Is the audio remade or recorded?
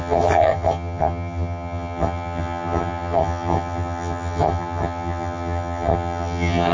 remade